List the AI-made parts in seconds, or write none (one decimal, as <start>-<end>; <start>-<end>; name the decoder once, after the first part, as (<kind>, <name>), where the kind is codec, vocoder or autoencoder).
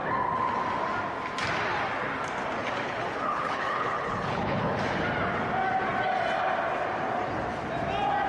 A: 2.6-4.8 (codec, HILCodec)